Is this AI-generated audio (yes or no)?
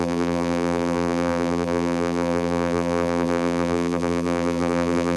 yes